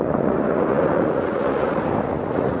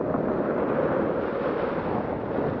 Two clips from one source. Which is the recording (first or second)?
second